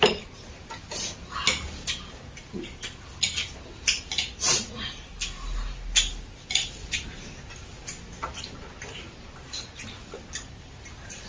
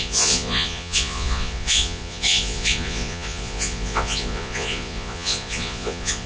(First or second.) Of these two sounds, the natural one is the first